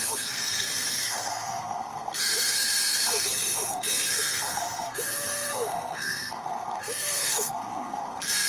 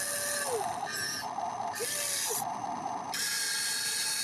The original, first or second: second